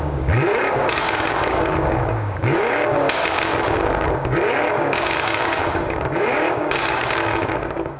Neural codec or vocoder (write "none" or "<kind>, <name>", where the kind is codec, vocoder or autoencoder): codec, DAC